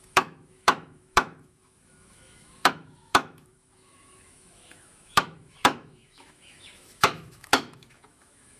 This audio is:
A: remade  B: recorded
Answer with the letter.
A